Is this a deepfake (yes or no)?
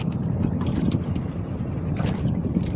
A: yes